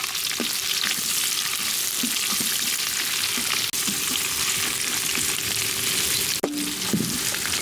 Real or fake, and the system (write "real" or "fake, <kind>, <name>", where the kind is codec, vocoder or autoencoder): real